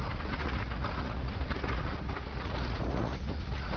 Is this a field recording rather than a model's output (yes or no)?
no